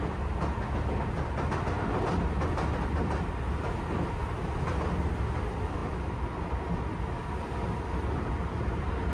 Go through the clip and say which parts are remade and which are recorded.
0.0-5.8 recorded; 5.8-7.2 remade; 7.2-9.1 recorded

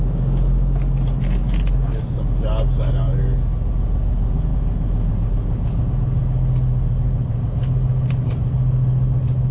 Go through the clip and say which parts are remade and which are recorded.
0.0-9.5 recorded

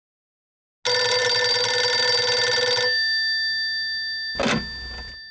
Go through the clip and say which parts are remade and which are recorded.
0.0-5.3 recorded

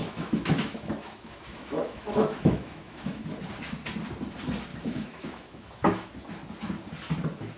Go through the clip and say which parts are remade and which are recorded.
0.0-3.2 remade; 3.2-4.7 recorded; 4.7-6.1 remade; 6.1-7.6 recorded

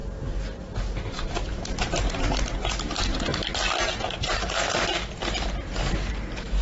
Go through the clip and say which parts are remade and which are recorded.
0.0-1.1 recorded; 1.1-3.3 remade; 3.3-4.3 recorded; 4.3-6.6 remade

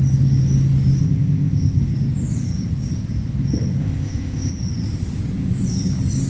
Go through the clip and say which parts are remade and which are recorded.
0.0-1.0 recorded; 1.0-1.8 remade; 1.8-3.8 recorded; 3.8-4.5 remade; 4.5-6.3 recorded